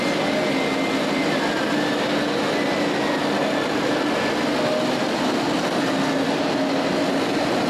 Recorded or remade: recorded